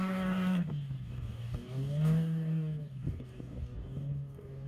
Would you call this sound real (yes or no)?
no